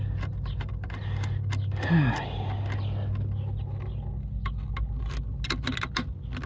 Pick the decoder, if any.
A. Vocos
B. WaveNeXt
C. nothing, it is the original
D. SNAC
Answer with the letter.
C